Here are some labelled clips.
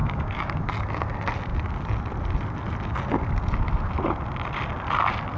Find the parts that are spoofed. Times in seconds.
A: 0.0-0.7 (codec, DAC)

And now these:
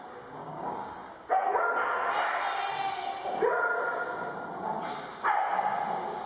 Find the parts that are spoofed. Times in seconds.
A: 0.4-1.1 (codec, DAC)

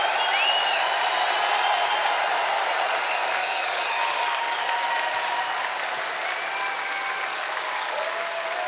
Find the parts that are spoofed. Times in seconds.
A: 3.2-4.9 (codec, DAC); 7.3-8.7